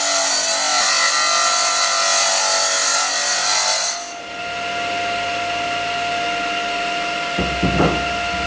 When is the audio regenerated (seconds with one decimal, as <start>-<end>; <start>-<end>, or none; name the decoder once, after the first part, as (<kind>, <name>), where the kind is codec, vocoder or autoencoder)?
none